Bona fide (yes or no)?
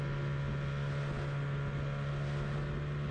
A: yes